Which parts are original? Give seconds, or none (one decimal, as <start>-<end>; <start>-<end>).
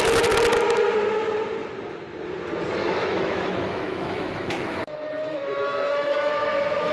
0.0-2.8; 6.3-6.9